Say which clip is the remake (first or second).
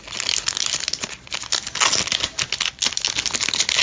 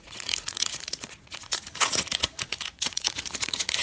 second